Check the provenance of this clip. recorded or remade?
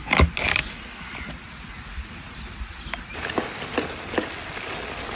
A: recorded